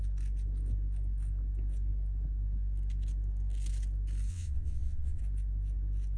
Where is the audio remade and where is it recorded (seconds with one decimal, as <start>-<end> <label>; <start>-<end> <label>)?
0.0-4.3 recorded; 4.3-5.2 remade; 5.2-6.2 recorded